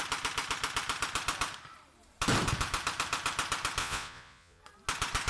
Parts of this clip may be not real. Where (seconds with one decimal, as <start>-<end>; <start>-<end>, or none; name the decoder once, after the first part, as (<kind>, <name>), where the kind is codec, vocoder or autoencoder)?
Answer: 3.8-4.6 (vocoder, Vocos)